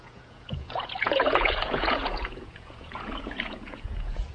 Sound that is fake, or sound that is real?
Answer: fake